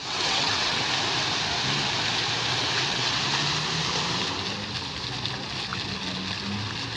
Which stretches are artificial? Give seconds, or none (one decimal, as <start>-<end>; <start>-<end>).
0.0-0.8; 2.5-3.2